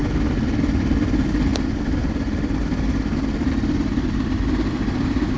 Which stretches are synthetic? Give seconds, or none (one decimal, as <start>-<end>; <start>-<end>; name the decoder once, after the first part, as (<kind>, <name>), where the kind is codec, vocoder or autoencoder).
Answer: none